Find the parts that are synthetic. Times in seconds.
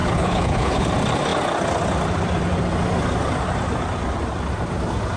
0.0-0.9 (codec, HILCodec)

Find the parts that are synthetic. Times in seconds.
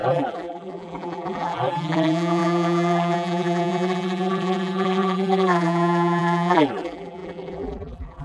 0.0-8.2 (vocoder, BigVGAN v2)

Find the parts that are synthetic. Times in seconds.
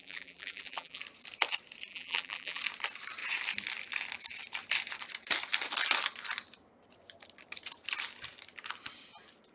0.0-1.0 (vocoder, BigVGAN v2); 1.9-2.6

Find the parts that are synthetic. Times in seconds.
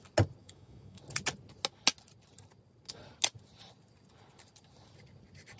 0.4-1.0 (autoencoder, DAC-VAE)